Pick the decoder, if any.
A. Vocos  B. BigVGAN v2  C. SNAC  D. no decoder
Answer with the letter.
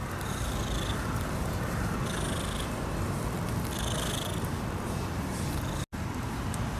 D